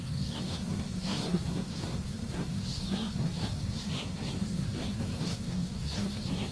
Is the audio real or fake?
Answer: fake